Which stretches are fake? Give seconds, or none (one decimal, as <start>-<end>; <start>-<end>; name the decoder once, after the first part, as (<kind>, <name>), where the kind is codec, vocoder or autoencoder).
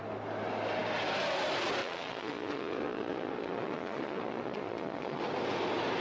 1.8-5.2 (vocoder, Vocos)